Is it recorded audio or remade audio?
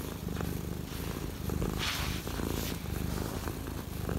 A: recorded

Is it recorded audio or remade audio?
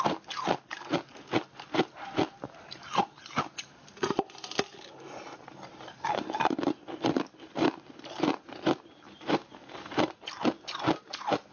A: recorded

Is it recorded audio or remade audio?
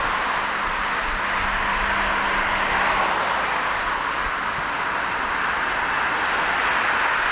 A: recorded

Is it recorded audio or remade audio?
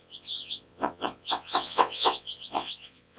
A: remade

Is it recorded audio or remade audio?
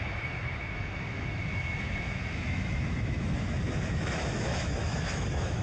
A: remade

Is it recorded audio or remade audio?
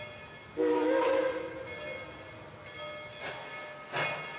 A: recorded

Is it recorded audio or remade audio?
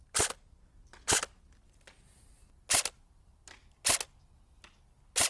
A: recorded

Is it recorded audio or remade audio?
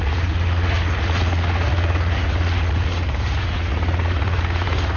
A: remade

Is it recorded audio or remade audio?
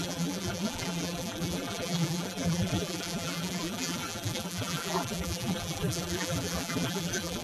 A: remade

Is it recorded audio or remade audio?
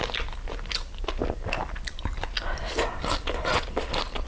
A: recorded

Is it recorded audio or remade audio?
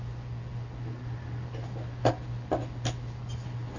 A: recorded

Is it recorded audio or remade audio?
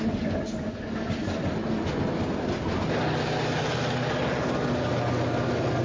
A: recorded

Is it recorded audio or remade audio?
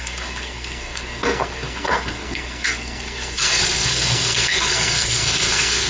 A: remade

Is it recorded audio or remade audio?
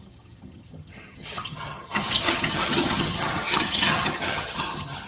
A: remade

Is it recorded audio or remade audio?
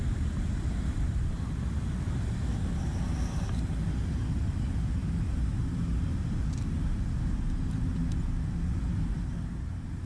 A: recorded